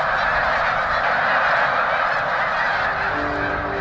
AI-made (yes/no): no